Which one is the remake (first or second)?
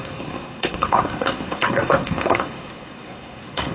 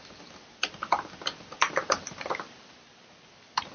first